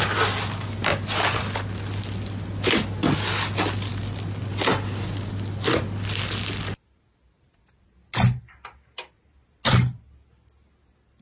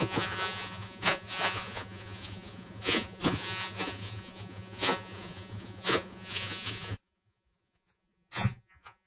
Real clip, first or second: first